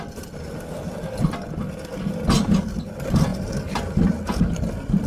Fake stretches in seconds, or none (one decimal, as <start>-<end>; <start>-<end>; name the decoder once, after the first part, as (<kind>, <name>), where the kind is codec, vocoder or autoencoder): none